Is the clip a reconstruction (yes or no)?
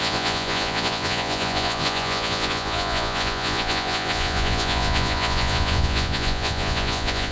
yes